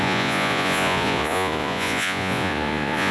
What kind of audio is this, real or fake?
fake